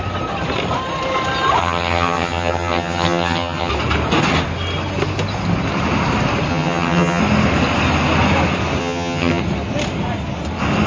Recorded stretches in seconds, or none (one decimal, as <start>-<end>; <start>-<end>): 0.0-1.6; 3.7-6.5; 7.2-8.8; 9.4-10.9